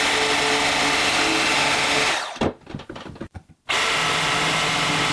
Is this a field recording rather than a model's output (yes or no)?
yes